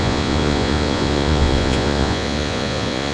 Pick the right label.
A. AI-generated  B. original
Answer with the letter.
A